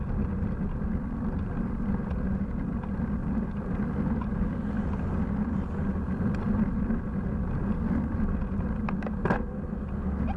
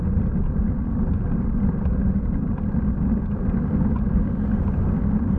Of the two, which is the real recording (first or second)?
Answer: first